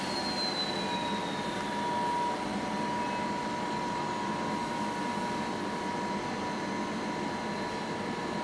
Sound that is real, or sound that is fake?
real